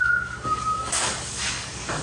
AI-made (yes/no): yes